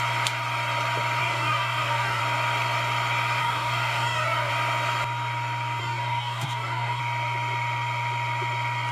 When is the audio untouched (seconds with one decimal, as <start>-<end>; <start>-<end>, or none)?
0.0-1.2; 2.2-3.4; 4.5-5.8; 7.0-8.9